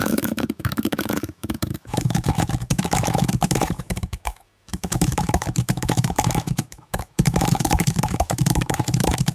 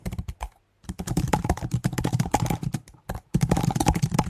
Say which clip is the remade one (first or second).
first